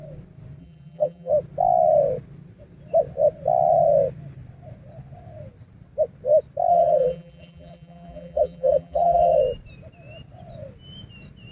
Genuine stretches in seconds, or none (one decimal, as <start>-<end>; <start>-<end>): 0.0-0.6; 1.3-6.7; 9.4-11.5